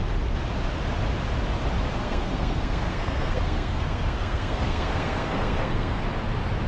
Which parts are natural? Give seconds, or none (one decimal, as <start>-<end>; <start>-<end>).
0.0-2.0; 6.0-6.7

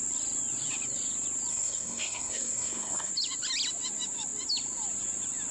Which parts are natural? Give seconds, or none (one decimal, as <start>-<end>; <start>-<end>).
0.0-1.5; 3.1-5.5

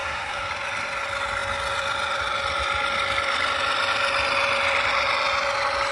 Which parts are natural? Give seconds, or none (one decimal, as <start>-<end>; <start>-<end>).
0.5-5.9

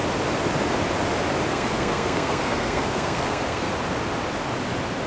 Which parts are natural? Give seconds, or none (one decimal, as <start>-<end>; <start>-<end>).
0.0-1.5; 3.7-5.1